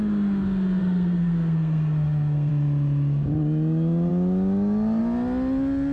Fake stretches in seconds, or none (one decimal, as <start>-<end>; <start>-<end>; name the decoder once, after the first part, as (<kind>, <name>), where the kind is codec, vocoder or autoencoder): 0.8-2.5 (codec, SNAC)